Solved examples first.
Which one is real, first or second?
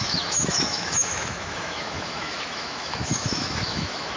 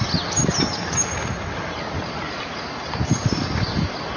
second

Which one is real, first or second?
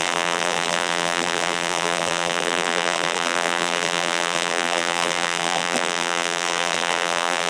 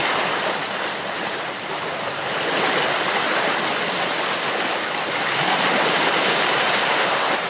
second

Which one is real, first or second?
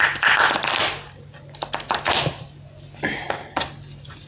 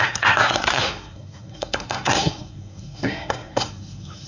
first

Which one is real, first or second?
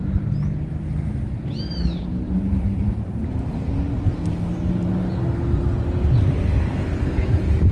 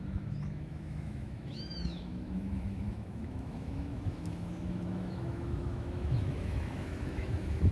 first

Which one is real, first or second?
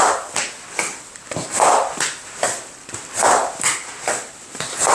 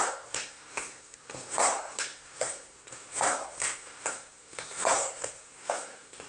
first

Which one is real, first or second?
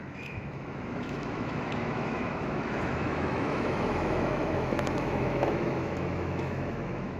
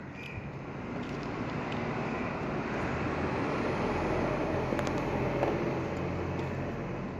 second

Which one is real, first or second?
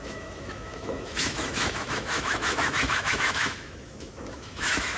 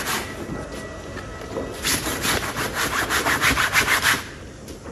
second